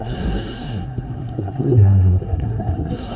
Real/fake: fake